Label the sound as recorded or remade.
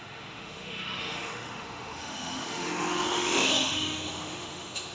remade